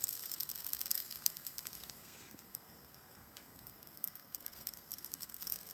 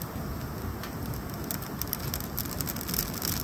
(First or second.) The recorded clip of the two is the second